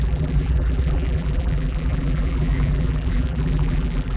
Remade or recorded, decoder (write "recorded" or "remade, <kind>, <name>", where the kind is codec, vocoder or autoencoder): remade, vocoder, BigVGAN v2